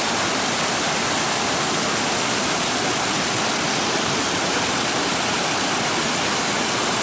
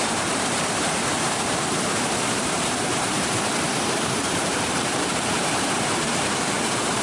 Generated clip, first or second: second